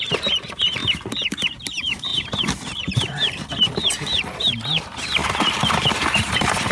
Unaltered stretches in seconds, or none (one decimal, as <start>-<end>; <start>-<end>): 0.8-1.4; 5.2-5.9